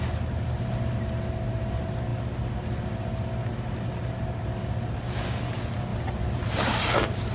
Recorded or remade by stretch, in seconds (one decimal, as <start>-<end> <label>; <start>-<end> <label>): 0.0-7.3 recorded